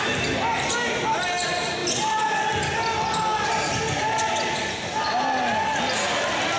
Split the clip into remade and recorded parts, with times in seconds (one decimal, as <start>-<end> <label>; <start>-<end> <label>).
0.0-6.6 recorded